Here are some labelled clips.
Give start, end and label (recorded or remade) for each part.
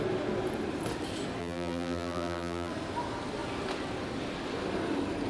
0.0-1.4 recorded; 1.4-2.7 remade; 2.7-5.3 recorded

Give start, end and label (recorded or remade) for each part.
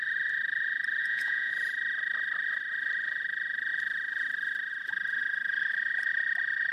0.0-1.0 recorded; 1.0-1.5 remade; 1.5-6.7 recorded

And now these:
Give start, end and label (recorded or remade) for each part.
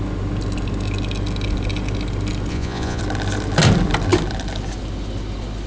0.0-2.5 recorded; 2.5-3.0 remade; 3.0-5.7 recorded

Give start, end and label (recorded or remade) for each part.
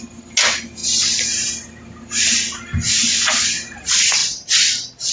0.0-5.1 recorded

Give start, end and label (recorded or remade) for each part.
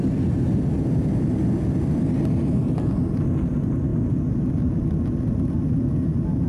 0.0-6.5 recorded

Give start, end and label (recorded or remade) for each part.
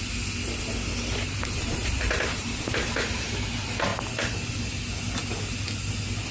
0.0-0.9 recorded; 0.9-3.2 remade; 3.2-6.3 recorded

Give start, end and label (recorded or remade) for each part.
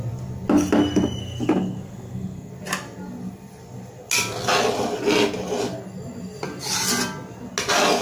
0.0-1.2 recorded; 1.2-2.5 remade; 2.5-8.0 recorded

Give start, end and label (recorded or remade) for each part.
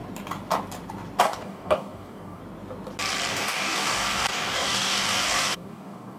0.0-1.2 recorded; 1.2-2.4 remade; 2.4-3.3 recorded; 3.3-6.2 remade